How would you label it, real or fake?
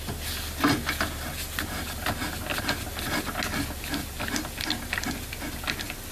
real